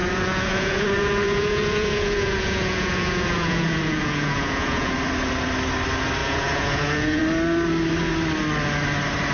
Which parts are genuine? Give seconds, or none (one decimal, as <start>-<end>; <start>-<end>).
4.9-6.2; 7.2-9.3